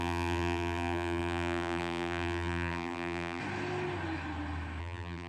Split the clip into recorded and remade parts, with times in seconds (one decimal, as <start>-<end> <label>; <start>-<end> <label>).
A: 0.0-3.4 remade; 3.4-4.8 recorded; 4.8-5.3 remade